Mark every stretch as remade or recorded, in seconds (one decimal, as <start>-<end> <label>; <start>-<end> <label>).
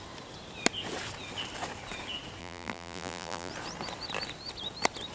0.0-2.4 recorded; 2.4-3.5 remade; 3.5-5.1 recorded